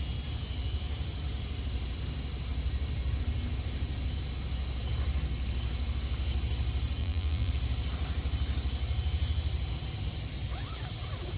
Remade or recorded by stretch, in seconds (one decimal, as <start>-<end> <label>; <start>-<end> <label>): 0.0-7.0 recorded; 7.0-7.5 remade; 7.5-11.4 recorded